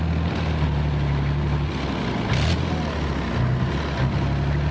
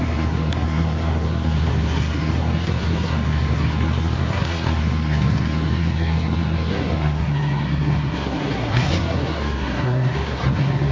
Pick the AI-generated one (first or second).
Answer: second